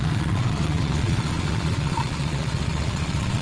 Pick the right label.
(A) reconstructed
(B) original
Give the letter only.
A